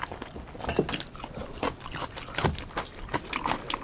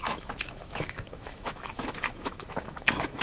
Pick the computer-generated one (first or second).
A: second